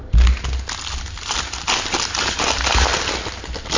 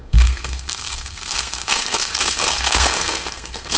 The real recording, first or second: first